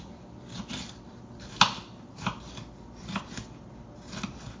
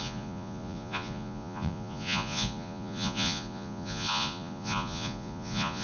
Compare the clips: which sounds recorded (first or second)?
first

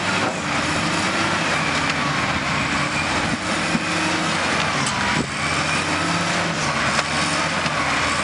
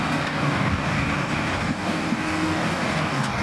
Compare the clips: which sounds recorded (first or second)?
first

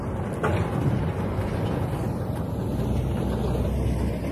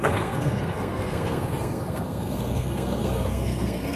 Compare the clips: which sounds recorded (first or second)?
first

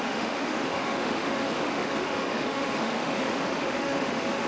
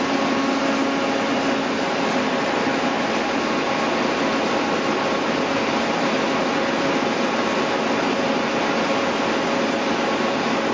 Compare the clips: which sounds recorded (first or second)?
second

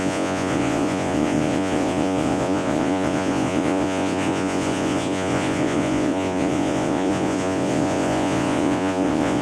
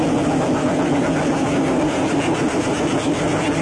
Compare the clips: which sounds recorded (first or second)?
second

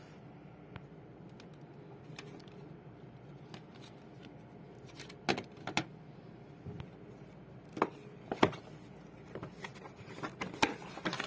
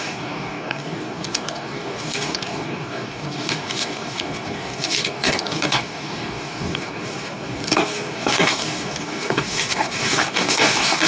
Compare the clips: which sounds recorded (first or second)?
first